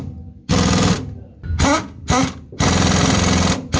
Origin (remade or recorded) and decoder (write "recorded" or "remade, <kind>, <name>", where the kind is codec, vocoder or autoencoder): recorded